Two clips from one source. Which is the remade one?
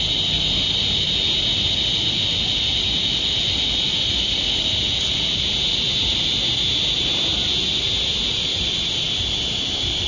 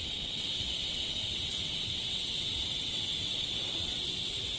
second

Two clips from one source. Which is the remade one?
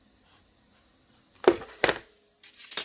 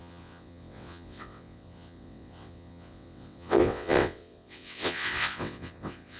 second